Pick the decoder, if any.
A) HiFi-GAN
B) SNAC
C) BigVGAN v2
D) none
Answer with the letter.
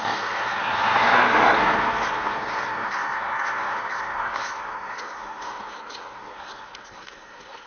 B